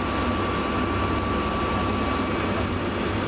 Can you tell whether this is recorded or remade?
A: recorded